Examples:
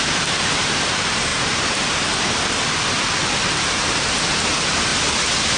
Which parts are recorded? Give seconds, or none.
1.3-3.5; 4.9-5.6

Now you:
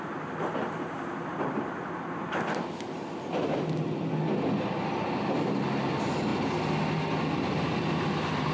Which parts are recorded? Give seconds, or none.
0.0-8.5